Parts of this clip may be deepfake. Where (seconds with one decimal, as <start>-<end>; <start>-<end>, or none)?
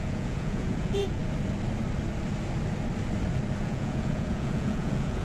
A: 0.0-1.2; 3.6-5.2